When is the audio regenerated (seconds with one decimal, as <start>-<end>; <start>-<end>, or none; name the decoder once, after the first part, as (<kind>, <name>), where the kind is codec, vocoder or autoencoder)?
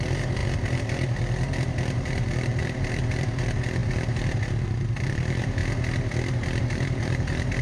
0.0-5.6 (vocoder, BigVGAN v2); 6.6-7.6